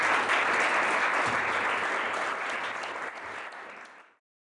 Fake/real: real